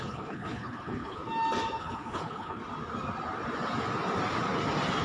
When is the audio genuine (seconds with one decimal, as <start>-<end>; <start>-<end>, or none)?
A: 1.2-1.8; 2.6-5.0